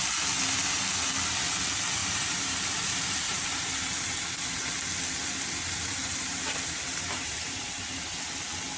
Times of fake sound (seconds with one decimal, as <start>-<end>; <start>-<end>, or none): 2.0-3.7; 6.0-7.6